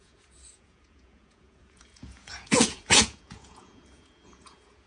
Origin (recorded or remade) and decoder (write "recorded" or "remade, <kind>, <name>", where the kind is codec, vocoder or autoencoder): remade, vocoder, Vocos